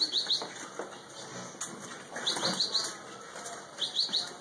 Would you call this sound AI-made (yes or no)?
no